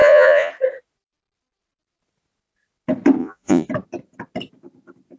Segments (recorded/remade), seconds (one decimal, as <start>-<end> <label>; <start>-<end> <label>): 0.0-0.5 remade; 0.5-3.2 recorded; 3.2-3.7 remade; 3.7-5.2 recorded